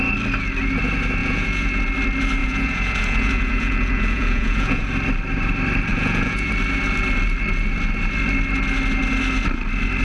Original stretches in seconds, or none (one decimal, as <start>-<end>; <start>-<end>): 0.0-1.2; 1.8-2.4; 4.9-5.9; 6.5-10.0